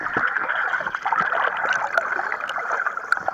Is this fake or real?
real